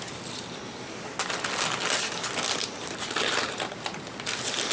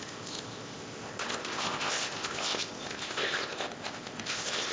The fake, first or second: second